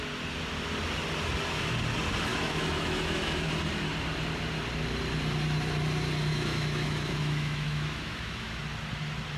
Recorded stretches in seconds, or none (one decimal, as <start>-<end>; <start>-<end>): 0.0-2.3; 3.5-6.3; 8.6-9.4